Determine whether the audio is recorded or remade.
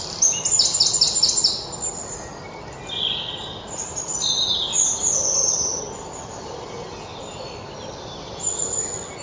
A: recorded